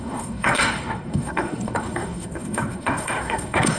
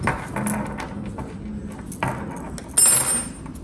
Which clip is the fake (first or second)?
first